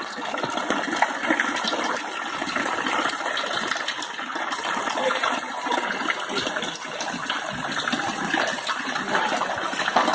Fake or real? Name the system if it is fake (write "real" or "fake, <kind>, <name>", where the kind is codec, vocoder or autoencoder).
real